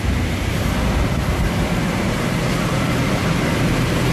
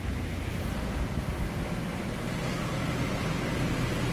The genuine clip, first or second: second